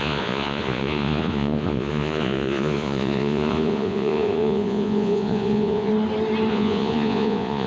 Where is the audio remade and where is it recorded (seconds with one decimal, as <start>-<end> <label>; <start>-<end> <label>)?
0.0-5.9 remade; 5.9-6.5 recorded; 6.5-7.7 remade

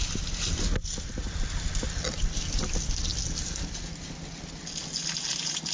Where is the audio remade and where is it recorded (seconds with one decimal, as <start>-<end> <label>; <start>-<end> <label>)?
0.0-5.7 recorded

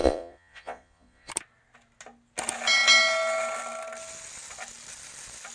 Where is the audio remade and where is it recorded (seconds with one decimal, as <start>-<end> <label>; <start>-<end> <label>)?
0.0-1.3 remade; 1.3-5.5 recorded

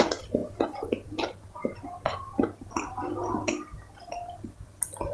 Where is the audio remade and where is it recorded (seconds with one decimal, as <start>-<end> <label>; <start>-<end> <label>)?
0.0-5.1 recorded

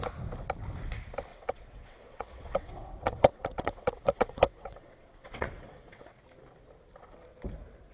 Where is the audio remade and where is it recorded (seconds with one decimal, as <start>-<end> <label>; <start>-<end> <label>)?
0.0-1.3 recorded; 1.3-6.0 remade; 6.0-7.9 recorded

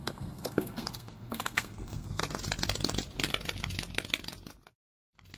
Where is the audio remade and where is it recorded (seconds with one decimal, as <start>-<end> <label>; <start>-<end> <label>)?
0.0-2.2 remade; 2.2-5.4 recorded